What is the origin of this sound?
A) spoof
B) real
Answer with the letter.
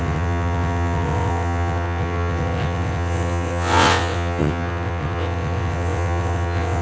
A